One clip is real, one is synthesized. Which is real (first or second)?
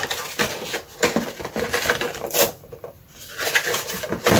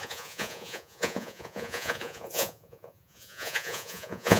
first